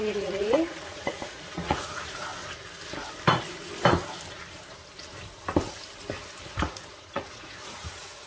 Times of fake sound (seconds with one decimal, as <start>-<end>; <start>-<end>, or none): 0.0-2.3; 6.5-8.3